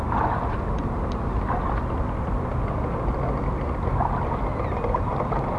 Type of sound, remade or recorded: recorded